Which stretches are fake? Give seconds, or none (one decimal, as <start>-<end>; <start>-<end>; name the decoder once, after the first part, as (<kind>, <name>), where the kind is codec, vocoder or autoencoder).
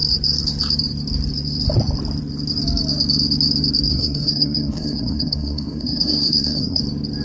3.9-6.8 (codec, SNAC)